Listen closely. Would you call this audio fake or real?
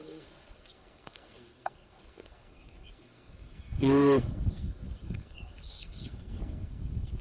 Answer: fake